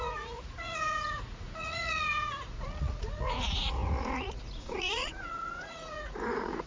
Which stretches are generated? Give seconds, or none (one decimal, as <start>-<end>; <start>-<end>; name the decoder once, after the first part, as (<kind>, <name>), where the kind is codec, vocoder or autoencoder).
0.0-6.7 (vocoder, Vocos)